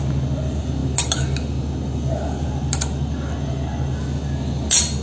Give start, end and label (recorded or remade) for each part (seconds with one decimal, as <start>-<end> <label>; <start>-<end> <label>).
0.0-5.0 recorded